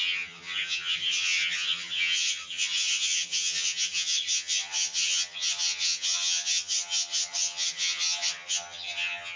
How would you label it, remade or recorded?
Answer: remade